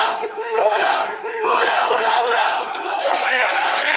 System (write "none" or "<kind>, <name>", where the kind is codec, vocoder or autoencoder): codec, SNAC